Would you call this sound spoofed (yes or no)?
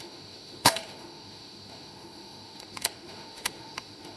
yes